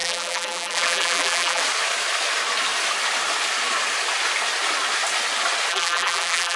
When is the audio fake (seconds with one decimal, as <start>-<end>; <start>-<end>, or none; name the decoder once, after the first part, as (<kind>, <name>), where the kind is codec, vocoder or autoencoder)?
0.0-1.6 (vocoder, BigVGAN v2); 5.7-6.6